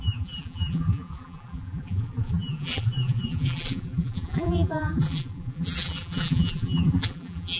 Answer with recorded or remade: remade